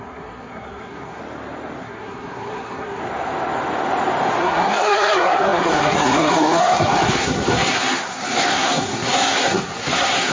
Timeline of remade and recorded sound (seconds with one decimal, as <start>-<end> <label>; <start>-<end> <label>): 0.0-1.2 remade; 1.2-1.8 recorded; 1.8-3.0 remade; 3.0-4.4 recorded; 4.4-10.3 remade